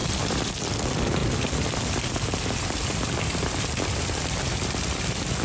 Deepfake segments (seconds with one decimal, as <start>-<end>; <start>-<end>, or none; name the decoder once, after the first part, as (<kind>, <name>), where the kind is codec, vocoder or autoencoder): 0.0-0.5 (vocoder, BigVGAN v2); 1.2-4.4